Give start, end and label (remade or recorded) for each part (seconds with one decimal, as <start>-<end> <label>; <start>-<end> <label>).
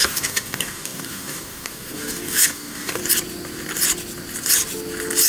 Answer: 0.0-3.0 remade; 3.0-5.3 recorded